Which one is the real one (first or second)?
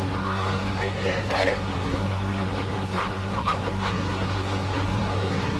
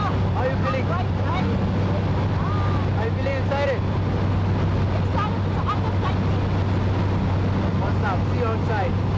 second